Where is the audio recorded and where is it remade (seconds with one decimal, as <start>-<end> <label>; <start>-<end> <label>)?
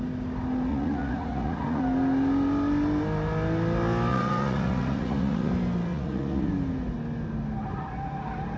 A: 0.0-0.7 recorded; 0.7-1.8 remade; 1.8-4.1 recorded; 4.1-5.5 remade; 5.5-5.9 recorded; 5.9-6.5 remade; 6.5-8.6 recorded